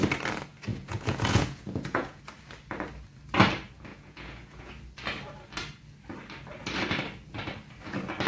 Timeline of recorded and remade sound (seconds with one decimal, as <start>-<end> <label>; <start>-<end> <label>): 0.0-0.7 recorded; 0.7-2.2 remade; 2.2-3.9 recorded; 3.9-4.7 remade; 4.7-8.3 recorded